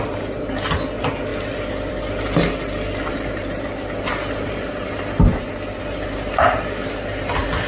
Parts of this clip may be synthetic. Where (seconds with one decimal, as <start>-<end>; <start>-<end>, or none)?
none

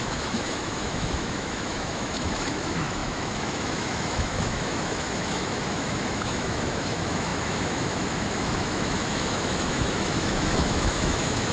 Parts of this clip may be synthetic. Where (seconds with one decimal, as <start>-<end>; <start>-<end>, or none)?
0.0-11.5

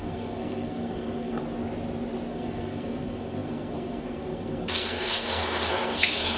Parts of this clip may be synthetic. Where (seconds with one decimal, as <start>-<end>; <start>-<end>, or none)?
0.0-1.4; 2.3-6.4

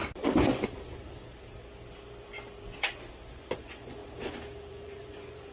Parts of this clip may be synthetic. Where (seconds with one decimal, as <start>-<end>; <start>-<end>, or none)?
3.3-4.0; 4.7-5.5

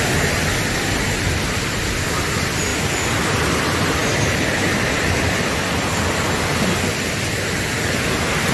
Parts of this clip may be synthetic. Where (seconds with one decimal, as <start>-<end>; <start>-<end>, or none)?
2.7-3.6